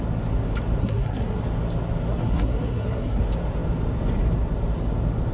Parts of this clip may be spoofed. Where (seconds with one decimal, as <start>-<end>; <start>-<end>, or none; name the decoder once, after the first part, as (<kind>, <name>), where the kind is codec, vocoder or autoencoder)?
0.8-1.4 (codec, SNAC); 2.1-3.2